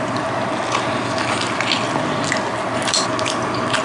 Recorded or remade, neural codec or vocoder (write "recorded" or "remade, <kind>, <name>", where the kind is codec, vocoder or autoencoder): recorded